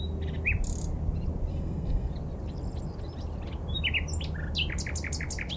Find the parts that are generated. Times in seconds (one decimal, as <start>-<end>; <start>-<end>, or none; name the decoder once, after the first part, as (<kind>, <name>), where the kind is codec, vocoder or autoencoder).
1.5-2.1 (codec, SNAC)